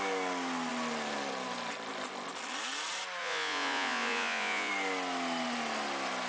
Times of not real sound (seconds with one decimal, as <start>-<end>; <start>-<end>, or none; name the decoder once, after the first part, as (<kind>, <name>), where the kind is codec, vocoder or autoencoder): 3.2-4.7 (vocoder, Vocos)